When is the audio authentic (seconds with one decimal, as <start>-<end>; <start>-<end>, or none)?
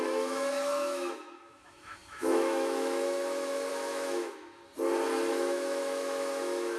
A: 4.6-5.3